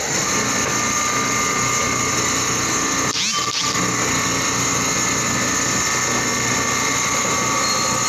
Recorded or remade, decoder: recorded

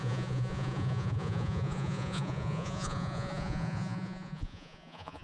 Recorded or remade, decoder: remade, vocoder, Vocos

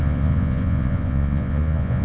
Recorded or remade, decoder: remade, vocoder, Vocos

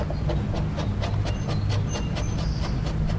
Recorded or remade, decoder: recorded